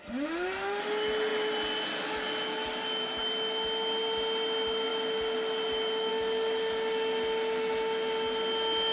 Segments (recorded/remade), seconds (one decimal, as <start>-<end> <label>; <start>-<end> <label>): 0.0-0.8 remade; 0.8-8.9 recorded